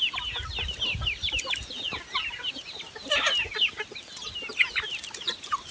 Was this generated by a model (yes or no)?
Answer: no